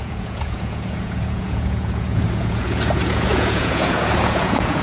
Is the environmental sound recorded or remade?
remade